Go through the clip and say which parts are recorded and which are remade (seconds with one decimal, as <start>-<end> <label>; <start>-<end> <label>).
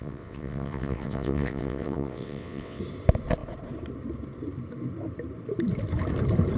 0.0-2.8 remade; 2.8-6.6 recorded